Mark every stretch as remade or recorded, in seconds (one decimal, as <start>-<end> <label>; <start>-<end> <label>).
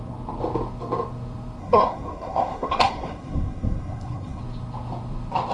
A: 0.0-1.6 recorded; 1.6-4.4 remade; 4.4-5.5 recorded